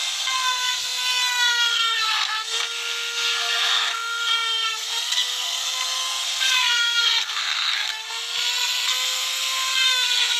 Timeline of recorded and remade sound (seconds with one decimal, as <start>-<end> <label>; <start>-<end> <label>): 0.0-10.4 remade